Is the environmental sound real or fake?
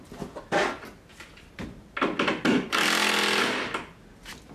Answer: real